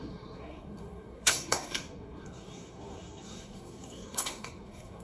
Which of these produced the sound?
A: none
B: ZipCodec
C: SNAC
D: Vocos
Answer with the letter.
C